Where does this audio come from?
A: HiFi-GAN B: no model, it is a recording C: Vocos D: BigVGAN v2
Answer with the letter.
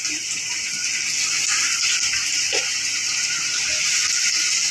B